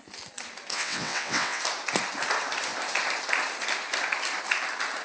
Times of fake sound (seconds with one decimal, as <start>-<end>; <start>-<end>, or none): 0.7-1.6